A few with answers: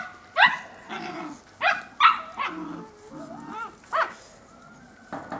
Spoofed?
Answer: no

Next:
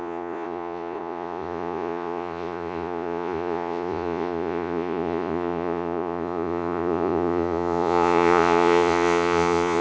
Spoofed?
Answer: yes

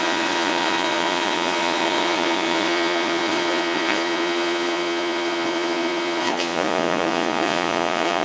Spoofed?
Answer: yes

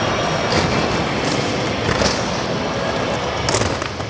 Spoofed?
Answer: no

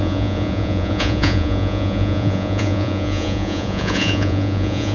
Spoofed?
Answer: yes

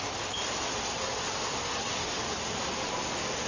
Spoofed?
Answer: no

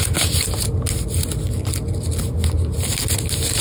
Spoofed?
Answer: no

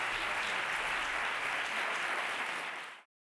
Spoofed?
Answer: no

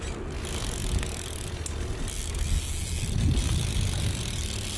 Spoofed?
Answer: no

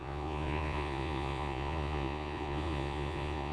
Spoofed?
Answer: yes